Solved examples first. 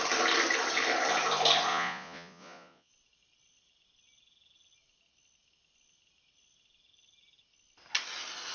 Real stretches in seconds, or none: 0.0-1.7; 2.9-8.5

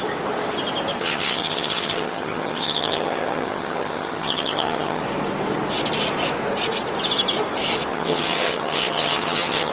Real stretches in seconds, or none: 0.0-1.0; 5.0-7.9

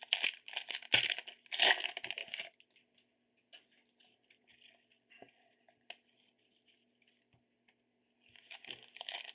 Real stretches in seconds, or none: 0.0-9.3

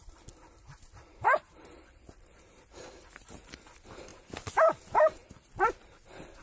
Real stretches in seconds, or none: 0.0-6.4

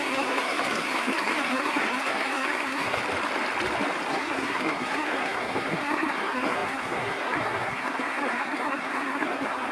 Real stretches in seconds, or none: 3.0-4.1

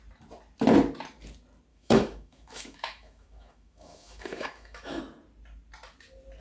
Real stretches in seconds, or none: 0.0-1.7; 5.0-6.4